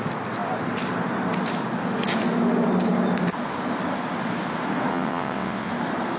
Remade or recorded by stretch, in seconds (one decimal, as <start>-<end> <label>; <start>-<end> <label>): 0.0-4.9 recorded; 4.9-5.7 remade; 5.7-6.2 recorded